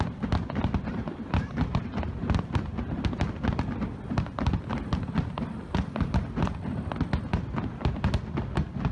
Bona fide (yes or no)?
yes